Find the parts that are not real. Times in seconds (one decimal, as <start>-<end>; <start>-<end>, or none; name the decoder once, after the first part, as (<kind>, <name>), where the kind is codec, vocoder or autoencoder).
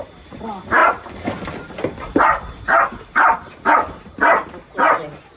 none